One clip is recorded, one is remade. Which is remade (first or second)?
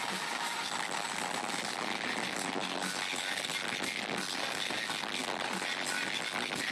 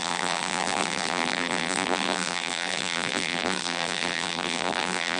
second